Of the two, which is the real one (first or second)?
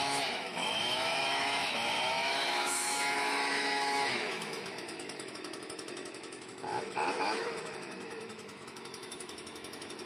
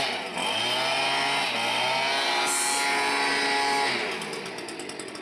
second